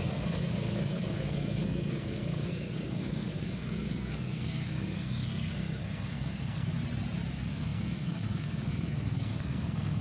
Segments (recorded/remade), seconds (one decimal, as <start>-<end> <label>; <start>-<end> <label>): 0.0-6.7 remade; 6.7-7.3 recorded; 7.3-10.0 remade